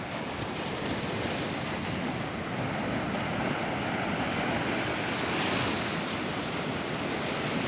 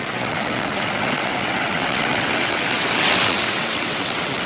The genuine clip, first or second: first